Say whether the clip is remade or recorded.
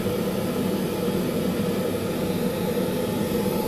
recorded